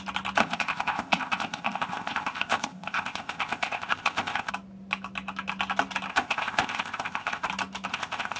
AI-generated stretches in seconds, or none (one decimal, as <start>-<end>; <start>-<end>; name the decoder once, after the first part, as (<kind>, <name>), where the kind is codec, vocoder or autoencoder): 0.4-4.5 (codec, ZipCodec); 6.1-7.5; 7.9-8.4